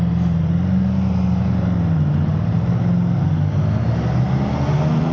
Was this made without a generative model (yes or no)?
yes